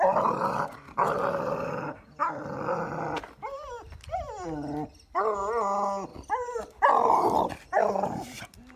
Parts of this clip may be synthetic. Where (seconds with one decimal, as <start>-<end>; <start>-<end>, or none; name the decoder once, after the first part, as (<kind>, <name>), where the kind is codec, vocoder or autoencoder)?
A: none